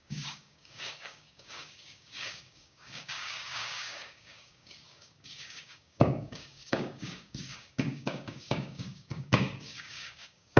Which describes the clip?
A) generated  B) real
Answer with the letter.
A